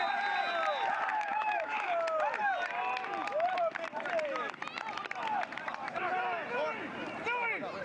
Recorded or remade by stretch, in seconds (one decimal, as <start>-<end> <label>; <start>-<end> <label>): 0.0-1.1 recorded; 1.1-1.9 remade; 1.9-7.8 recorded